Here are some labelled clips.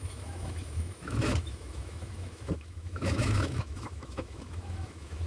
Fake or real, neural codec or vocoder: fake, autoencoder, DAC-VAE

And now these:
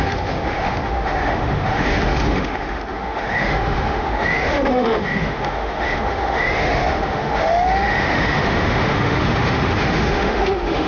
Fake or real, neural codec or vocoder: fake, autoencoder, DAC-VAE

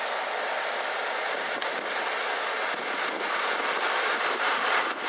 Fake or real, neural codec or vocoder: real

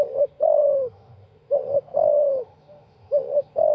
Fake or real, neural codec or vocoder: fake, autoencoder, DAC-VAE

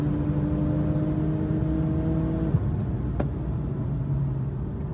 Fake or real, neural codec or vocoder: real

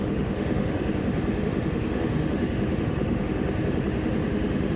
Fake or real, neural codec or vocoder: fake, autoencoder, DAC-VAE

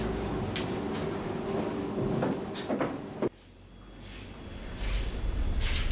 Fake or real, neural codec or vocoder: real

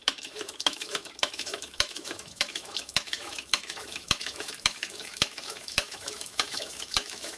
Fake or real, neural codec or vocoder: fake, autoencoder, DAC-VAE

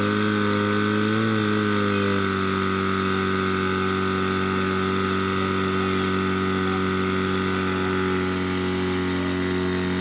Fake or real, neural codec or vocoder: real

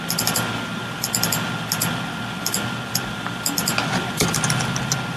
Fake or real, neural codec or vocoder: real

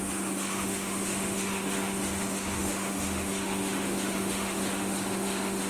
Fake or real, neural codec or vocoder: fake, autoencoder, DAC-VAE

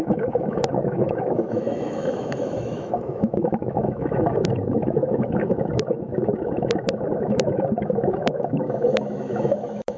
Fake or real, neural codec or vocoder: fake, autoencoder, DAC-VAE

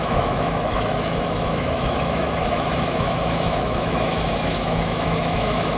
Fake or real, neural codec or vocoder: fake, autoencoder, DAC-VAE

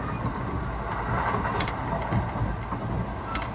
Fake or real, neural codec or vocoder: real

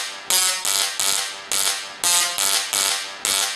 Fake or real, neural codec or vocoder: real